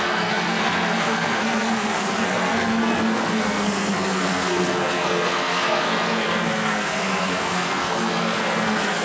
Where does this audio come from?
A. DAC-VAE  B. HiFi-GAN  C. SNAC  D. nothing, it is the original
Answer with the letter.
C